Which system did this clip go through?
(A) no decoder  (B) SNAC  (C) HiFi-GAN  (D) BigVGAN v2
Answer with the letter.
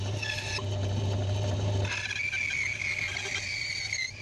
A